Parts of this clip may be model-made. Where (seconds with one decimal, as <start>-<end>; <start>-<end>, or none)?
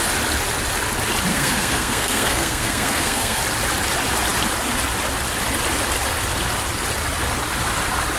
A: 1.3-3.4